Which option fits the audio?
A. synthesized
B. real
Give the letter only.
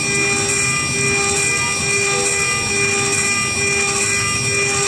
B